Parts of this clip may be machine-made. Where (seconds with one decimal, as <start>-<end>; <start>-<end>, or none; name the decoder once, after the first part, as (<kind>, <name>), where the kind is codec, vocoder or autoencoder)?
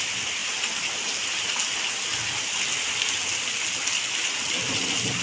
none